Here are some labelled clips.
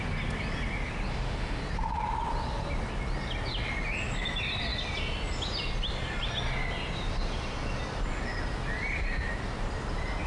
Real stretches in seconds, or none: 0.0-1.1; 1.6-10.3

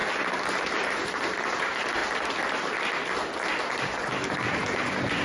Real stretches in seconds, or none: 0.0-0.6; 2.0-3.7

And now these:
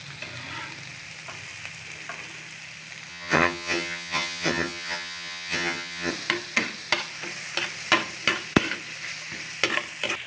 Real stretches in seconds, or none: 0.0-3.1; 6.1-10.3

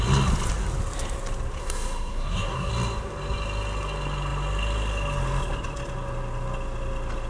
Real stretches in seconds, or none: 0.0-1.6; 2.7-7.3

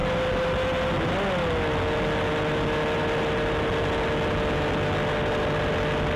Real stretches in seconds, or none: 0.0-6.2